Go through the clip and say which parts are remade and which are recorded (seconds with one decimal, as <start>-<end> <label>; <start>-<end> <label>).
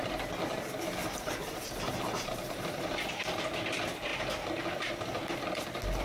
0.0-1.0 recorded; 1.0-3.3 remade; 3.3-6.0 recorded